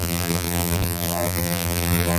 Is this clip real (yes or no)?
no